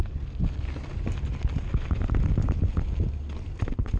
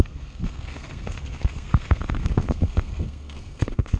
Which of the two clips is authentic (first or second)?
first